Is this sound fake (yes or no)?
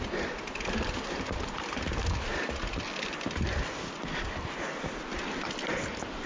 no